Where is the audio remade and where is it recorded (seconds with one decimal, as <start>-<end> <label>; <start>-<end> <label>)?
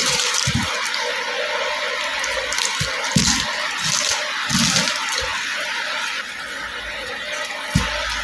0.0-0.7 remade; 0.7-8.2 recorded